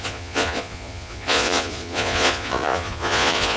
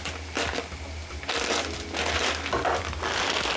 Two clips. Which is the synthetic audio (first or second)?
first